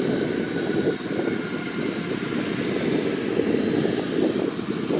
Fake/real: real